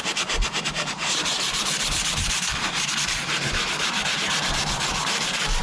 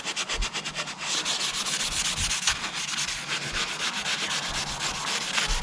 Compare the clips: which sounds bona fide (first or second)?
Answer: second